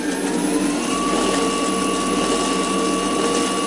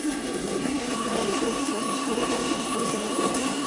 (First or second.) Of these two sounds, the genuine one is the first